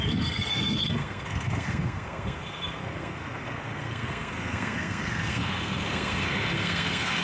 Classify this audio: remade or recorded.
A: remade